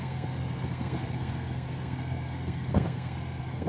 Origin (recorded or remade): remade